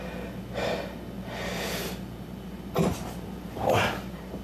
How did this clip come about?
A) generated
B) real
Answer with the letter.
B